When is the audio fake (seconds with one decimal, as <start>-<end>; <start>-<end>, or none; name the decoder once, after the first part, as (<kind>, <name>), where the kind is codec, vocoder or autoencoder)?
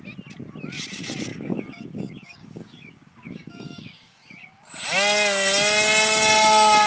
1.3-4.7 (codec, DAC)